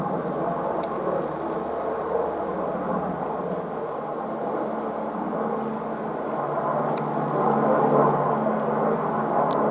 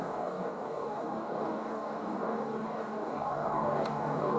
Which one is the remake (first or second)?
second